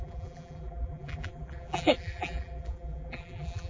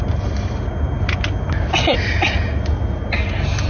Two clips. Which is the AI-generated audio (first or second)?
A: first